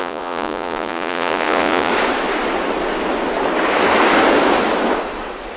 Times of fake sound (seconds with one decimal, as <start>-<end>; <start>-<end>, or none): 0.0-1.9